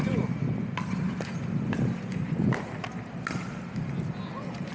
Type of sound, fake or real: real